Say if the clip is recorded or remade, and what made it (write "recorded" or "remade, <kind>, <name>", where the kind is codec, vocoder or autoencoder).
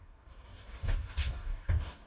remade, codec, DAC